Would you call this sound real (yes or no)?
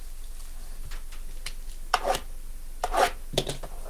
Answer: yes